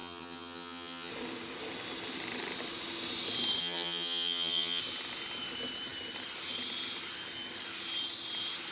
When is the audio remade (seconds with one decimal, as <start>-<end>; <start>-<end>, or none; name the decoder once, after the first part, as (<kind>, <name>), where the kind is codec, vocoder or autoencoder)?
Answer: 0.0-1.1 (vocoder, HiFi-GAN); 3.6-4.8